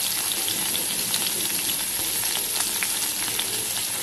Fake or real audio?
real